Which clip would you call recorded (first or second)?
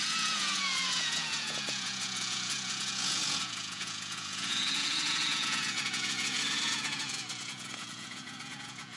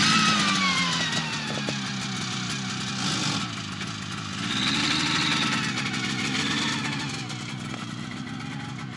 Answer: second